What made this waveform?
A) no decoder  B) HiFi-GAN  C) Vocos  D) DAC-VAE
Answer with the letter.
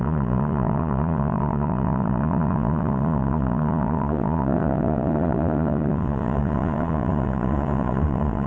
C